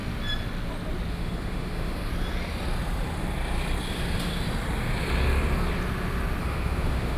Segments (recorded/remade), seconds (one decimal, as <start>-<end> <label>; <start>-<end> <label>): 0.0-1.1 recorded; 1.1-2.1 remade; 2.1-6.4 recorded; 6.4-7.2 remade